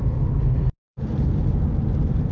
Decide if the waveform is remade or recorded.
recorded